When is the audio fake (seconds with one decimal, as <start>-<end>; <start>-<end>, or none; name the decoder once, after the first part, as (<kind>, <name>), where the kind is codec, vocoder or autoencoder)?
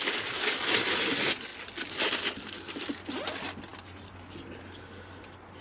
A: none